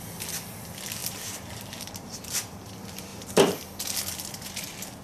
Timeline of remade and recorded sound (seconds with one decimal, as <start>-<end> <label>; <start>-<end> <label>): 0.0-1.0 recorded; 1.0-2.6 remade; 2.6-3.1 recorded; 3.1-3.6 remade; 3.6-5.0 recorded